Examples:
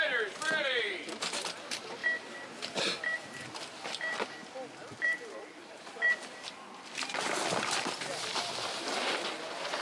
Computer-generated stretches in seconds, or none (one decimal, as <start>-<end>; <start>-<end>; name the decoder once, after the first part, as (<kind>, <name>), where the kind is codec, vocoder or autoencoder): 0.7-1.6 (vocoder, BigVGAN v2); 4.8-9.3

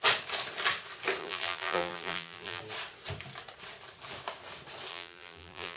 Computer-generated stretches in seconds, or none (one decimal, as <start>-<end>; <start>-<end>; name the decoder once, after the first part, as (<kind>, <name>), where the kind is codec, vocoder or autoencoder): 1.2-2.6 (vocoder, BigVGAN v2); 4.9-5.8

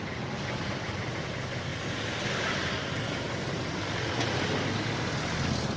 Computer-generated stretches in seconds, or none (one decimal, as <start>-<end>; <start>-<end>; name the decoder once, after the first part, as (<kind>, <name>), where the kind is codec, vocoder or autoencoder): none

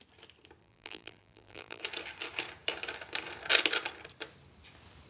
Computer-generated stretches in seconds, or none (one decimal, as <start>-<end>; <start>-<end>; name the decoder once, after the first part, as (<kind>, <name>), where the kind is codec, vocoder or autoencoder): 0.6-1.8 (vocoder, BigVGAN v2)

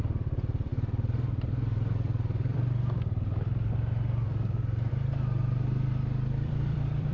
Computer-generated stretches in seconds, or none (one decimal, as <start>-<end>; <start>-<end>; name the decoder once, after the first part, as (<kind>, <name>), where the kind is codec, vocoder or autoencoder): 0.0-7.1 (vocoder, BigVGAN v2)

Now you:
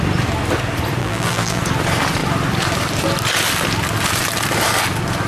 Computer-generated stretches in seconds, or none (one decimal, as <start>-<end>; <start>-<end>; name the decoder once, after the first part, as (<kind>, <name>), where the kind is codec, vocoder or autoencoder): 1.0-1.6 (vocoder, BigVGAN v2)